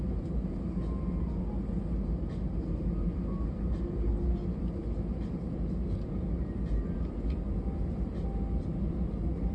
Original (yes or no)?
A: yes